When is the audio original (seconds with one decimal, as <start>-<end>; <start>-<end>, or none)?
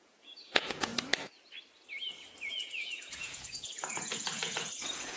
0.9-2.5